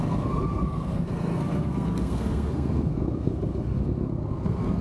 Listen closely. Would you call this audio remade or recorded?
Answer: remade